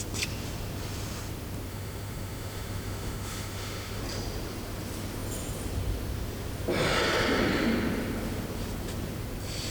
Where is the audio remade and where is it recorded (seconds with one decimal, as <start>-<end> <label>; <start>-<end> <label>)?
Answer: 0.0-1.7 recorded; 1.7-4.0 remade; 4.0-9.7 recorded